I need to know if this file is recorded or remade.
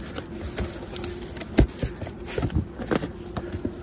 recorded